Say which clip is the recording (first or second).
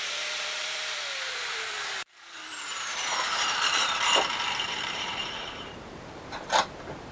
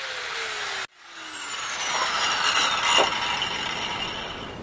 second